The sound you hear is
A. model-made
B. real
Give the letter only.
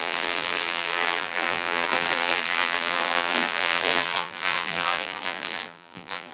A